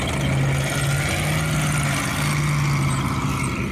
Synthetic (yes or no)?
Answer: no